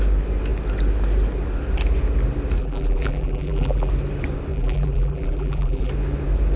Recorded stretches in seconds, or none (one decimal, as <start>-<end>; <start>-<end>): 0.0-2.6; 3.9-4.5; 5.9-6.6